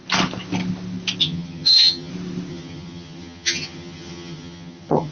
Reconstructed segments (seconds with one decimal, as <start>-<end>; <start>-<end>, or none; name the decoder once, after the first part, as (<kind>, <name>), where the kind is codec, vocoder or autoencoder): 1.2-2.1 (vocoder, HiFi-GAN); 2.5-5.1